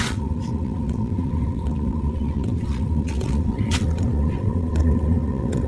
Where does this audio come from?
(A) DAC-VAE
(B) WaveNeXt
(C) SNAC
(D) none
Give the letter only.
B